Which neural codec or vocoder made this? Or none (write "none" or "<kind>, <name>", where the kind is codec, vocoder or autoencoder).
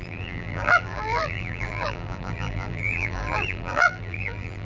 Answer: vocoder, BigVGAN v2